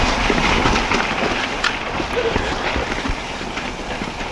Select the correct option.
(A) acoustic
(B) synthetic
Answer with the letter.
A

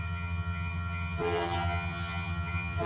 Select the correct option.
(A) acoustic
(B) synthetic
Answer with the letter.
B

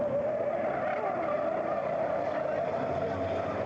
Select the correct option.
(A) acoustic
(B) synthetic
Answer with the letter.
A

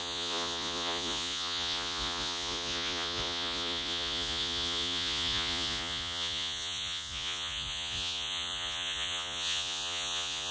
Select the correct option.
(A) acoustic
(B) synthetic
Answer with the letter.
B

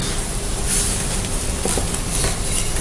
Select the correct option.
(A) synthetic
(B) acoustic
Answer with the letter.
B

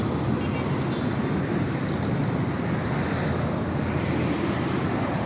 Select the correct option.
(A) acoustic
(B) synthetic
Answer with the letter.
A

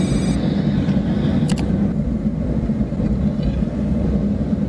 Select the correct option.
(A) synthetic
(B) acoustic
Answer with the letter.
B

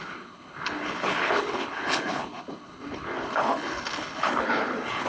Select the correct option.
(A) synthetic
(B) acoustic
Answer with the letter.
A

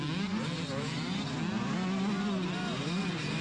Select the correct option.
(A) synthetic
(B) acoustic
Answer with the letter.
B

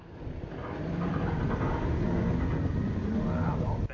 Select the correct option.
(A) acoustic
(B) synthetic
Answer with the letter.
A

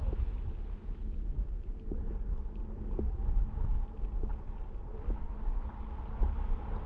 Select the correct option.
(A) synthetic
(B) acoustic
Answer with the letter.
B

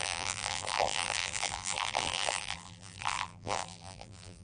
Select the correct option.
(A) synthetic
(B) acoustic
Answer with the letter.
A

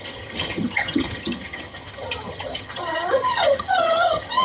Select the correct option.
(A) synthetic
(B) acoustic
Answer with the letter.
A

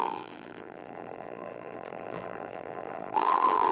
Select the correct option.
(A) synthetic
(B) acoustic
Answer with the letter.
A